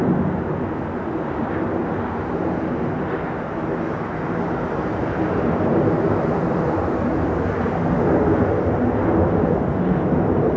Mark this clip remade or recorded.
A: recorded